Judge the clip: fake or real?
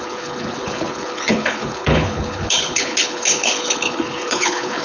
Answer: fake